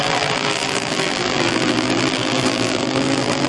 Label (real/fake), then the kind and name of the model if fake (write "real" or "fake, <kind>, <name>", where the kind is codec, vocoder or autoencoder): fake, vocoder, BigVGAN v2